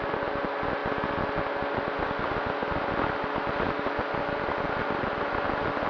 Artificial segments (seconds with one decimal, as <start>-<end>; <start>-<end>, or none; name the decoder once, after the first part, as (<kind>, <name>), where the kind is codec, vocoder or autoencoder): none